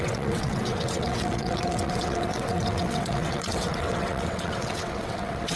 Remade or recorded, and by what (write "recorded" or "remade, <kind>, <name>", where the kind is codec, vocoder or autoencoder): remade, vocoder, WaveNeXt